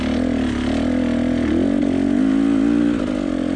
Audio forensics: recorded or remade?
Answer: recorded